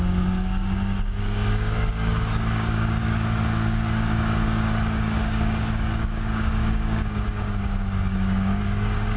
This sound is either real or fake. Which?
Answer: fake